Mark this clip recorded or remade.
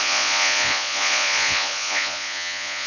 remade